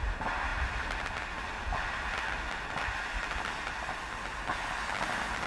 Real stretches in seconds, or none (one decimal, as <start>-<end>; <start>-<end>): 0.0-5.5